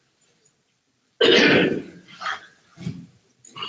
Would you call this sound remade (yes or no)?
no